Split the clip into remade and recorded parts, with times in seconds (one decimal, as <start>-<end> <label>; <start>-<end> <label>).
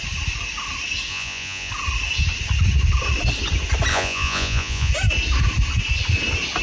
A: 0.0-1.1 recorded; 1.1-1.7 remade; 1.7-3.9 recorded; 3.9-4.9 remade; 4.9-6.6 recorded